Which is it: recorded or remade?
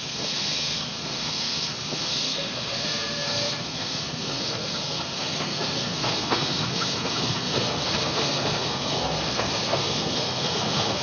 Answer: remade